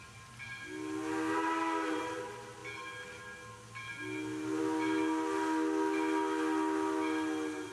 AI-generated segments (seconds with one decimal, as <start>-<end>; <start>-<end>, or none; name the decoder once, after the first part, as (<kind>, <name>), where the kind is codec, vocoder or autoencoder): none